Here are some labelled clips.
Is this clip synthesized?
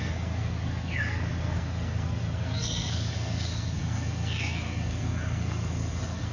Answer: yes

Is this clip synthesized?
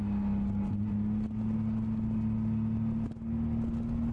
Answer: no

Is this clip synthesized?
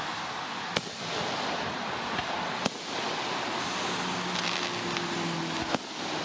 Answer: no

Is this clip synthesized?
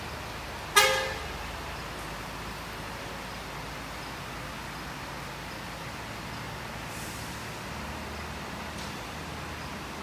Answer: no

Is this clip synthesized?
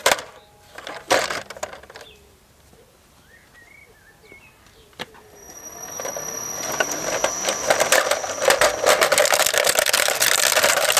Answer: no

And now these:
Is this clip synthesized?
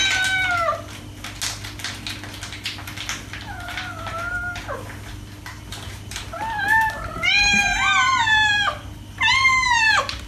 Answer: no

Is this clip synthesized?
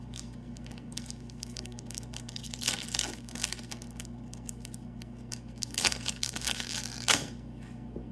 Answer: yes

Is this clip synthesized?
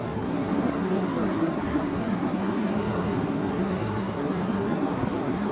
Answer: yes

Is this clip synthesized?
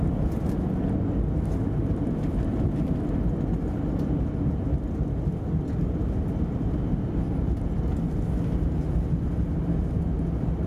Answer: no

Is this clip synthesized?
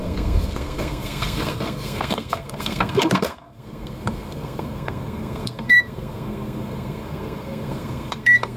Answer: yes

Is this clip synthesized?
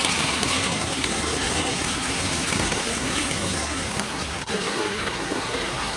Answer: yes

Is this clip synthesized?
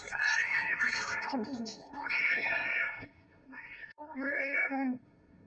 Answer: yes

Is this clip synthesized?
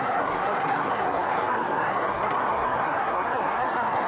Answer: yes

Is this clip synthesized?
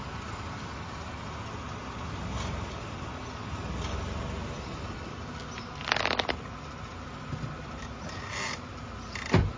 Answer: no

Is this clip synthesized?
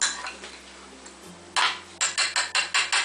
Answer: no